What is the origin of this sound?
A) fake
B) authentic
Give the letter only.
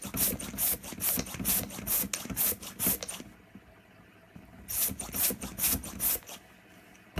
B